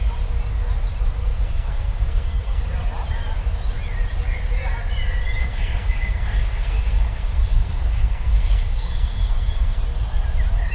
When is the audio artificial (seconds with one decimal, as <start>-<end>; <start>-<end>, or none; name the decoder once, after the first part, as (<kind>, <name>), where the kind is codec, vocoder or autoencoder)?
1.2-2.6 (codec, SNAC); 5.4-9.8